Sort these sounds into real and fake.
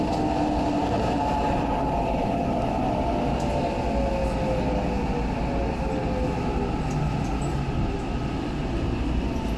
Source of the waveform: real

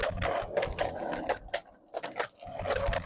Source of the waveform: real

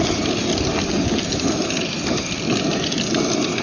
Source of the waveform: real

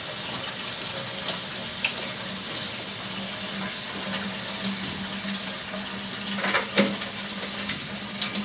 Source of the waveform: real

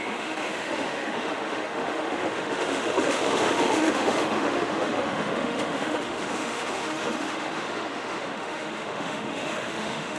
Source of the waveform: fake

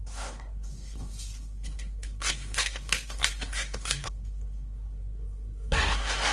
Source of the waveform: fake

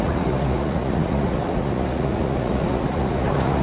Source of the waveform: fake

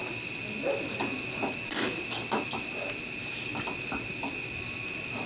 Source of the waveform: real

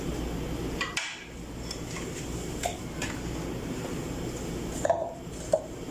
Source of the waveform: real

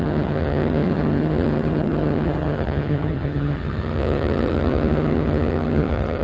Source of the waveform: fake